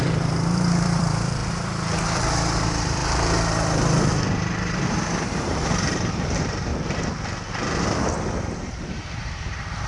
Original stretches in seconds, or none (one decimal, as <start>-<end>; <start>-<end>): 1.4-2.3; 3.0-4.0; 6.7-8.9